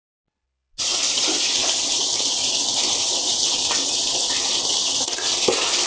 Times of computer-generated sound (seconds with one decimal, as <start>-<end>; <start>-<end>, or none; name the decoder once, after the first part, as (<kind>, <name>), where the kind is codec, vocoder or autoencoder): none